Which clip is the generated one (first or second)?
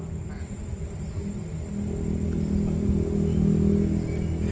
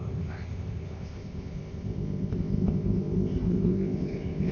second